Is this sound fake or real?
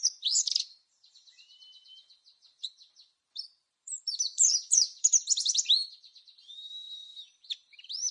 fake